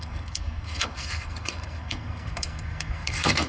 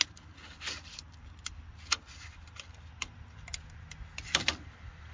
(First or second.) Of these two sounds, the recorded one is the second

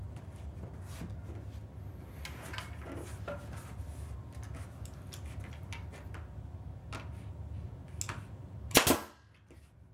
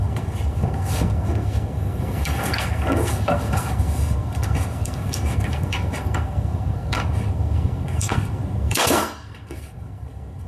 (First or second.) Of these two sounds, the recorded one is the first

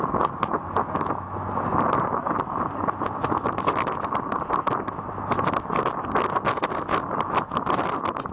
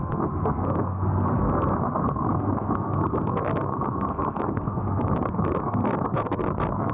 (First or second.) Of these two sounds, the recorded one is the first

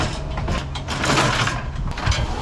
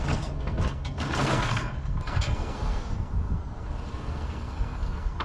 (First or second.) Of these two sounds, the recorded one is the first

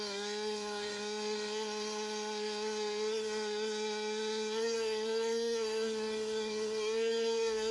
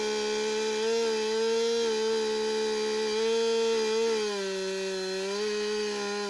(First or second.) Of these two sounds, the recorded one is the second